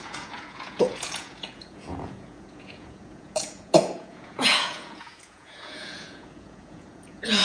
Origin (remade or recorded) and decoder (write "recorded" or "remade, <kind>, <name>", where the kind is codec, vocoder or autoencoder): remade, vocoder, Vocos